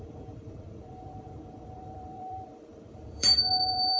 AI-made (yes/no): yes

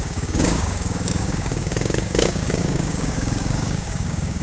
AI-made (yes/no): yes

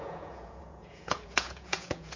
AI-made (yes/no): yes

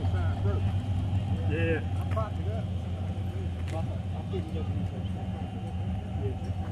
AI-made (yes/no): no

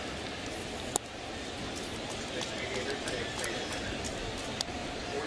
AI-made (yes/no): no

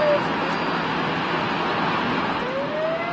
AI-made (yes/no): no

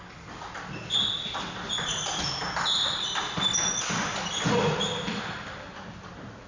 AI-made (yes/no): no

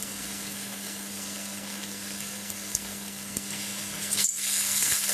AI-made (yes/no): yes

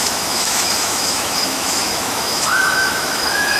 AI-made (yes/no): yes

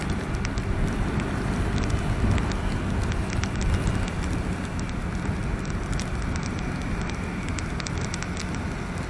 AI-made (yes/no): no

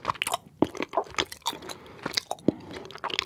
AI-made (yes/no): no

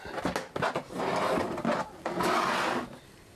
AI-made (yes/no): no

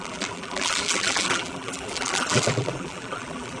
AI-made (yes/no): yes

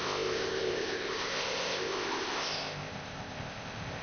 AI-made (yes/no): yes